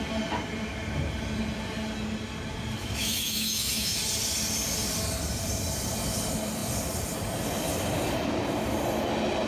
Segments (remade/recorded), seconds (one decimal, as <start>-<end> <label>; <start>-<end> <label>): 0.0-2.8 recorded; 2.8-4.0 remade; 4.0-9.5 recorded